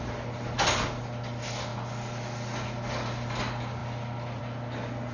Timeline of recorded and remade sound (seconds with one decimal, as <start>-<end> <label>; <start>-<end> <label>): 0.0-5.1 recorded